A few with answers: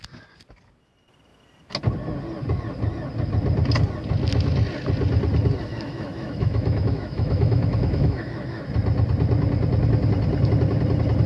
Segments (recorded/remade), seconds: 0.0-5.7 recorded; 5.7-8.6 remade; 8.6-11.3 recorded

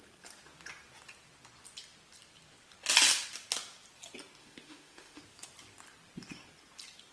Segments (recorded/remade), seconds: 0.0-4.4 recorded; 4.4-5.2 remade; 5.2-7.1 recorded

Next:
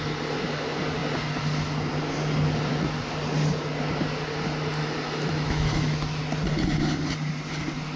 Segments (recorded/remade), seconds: 0.0-4.8 recorded; 4.8-6.2 remade; 6.2-8.0 recorded